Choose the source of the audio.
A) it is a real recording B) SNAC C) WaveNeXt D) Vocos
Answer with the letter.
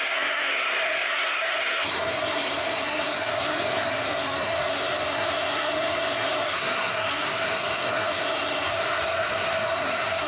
B